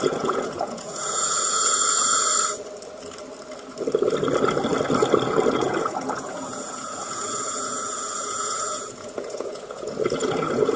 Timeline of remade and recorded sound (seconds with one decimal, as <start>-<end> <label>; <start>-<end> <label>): 0.0-2.3 remade; 2.3-5.5 recorded; 5.5-10.8 remade